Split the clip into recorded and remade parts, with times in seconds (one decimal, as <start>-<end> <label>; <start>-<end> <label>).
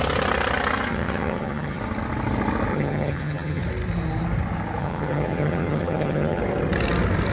0.0-0.9 recorded; 0.9-1.8 remade; 1.8-2.7 recorded; 2.7-3.6 remade; 3.6-4.8 recorded; 4.8-6.4 remade; 6.4-7.3 recorded